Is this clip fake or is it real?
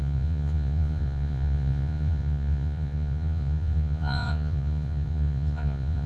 fake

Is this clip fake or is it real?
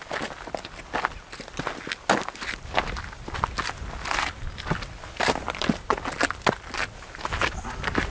real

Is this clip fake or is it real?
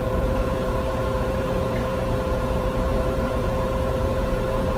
fake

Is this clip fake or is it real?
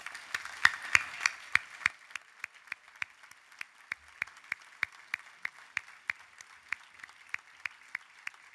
real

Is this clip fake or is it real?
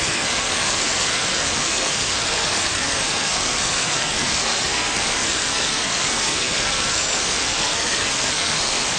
fake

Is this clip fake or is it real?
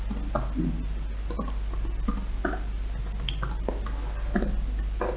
real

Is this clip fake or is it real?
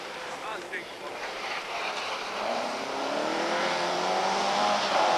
fake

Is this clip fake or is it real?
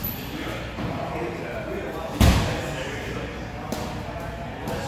real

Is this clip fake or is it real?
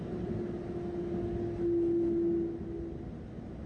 real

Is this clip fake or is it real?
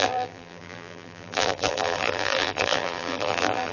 fake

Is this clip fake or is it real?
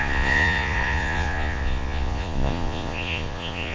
fake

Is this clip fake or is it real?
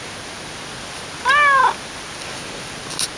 real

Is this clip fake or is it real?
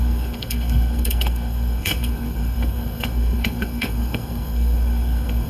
fake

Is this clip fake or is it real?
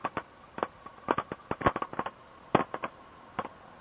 real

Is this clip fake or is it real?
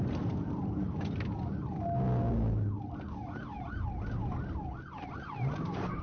real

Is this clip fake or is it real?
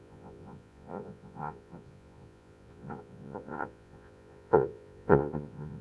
fake